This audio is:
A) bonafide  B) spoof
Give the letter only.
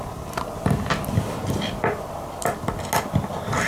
A